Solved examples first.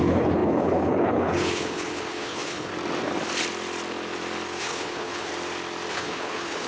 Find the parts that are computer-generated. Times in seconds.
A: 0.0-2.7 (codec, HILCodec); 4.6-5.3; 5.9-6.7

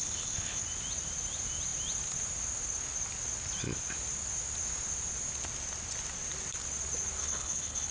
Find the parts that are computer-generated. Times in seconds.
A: 0.0-0.6 (codec, HILCodec); 7.2-7.9

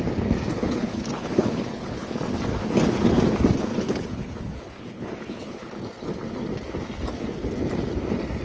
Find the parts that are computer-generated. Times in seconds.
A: 0.6-2.1 (codec, HILCodec); 3.7-5.7

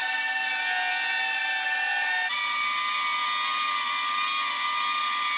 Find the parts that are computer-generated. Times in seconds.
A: none

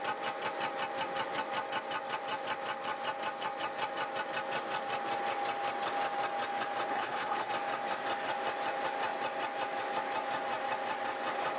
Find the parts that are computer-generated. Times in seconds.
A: 6.9-7.5 (codec, HILCodec)

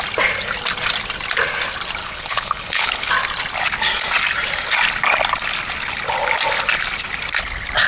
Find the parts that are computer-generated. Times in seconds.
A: 2.0-3.1 (codec, HILCodec)

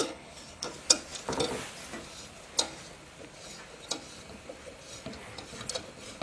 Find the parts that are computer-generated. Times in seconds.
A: 0.0-0.7 (codec, HILCodec)

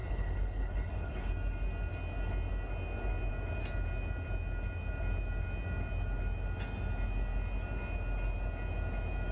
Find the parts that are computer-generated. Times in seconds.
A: 0.0-1.3 (codec, HILCodec)